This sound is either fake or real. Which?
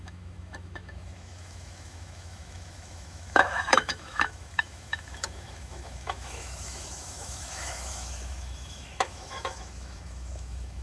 fake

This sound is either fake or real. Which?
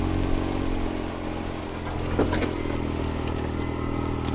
real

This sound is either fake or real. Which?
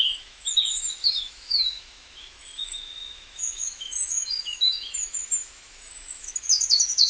fake